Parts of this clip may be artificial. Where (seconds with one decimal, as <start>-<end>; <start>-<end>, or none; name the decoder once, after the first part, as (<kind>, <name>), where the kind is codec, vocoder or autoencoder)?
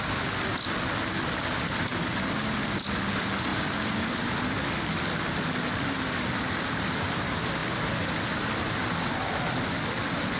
none